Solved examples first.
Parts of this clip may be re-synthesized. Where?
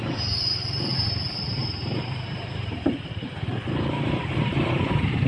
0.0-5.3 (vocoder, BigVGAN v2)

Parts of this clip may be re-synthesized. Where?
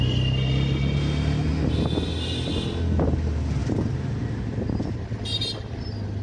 none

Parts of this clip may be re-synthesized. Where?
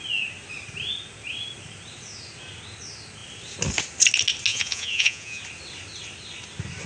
4.5-5.4 (vocoder, Vocos)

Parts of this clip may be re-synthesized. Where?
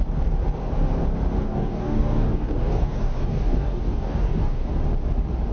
1.4-4.7 (codec, DAC)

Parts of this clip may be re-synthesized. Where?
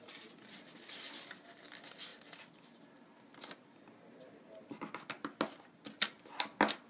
none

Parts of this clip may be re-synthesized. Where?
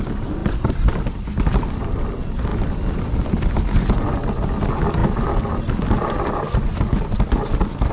0.4-1.9 (vocoder, BigVGAN v2); 2.5-3.5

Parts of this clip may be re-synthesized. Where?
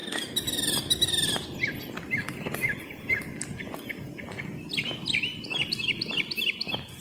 none